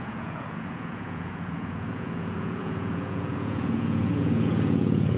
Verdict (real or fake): fake